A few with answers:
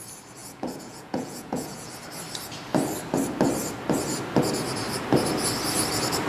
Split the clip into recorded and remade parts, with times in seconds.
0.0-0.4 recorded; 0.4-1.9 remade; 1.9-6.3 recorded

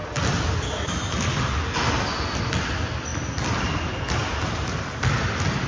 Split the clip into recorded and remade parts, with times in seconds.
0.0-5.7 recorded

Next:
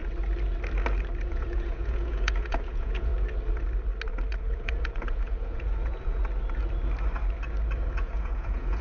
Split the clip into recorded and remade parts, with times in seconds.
0.0-1.2 recorded; 1.2-3.1 remade; 3.1-4.4 recorded; 4.4-6.2 remade; 6.2-7.9 recorded; 7.9-8.8 remade

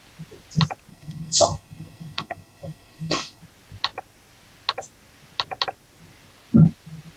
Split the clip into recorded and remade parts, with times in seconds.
0.0-0.9 recorded; 0.9-3.4 remade; 3.4-7.2 recorded